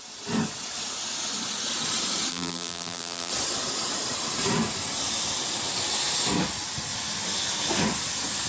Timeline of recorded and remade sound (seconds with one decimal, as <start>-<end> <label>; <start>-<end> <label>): 0.0-2.3 recorded; 2.3-3.3 remade; 3.3-8.5 recorded